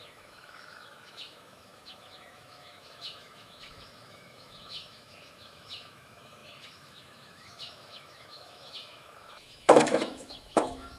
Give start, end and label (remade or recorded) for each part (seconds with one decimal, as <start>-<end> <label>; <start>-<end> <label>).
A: 0.0-11.0 remade